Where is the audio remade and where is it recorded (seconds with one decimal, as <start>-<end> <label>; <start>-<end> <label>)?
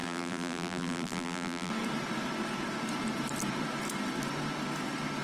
0.0-1.7 remade; 1.7-5.2 recorded